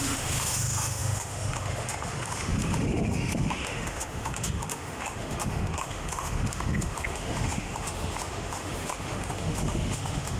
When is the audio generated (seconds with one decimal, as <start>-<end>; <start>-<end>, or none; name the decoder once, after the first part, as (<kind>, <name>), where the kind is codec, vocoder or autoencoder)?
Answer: 0.0-10.4 (autoencoder, DAC-VAE)